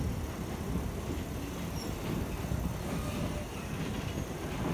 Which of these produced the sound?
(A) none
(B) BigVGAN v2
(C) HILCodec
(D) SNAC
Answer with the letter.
A